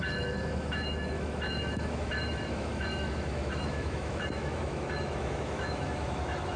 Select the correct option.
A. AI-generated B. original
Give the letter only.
A